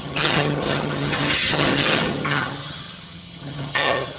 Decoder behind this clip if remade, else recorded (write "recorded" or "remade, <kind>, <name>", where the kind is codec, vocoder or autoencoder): remade, vocoder, HiFi-GAN